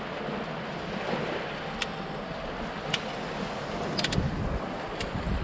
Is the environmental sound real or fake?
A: real